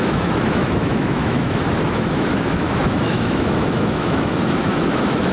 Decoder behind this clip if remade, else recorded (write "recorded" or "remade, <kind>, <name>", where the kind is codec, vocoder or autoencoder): remade, autoencoder, DAC-VAE